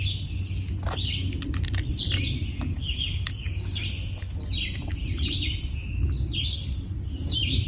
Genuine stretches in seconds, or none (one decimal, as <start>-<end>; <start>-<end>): 0.0-2.5; 3.8-7.7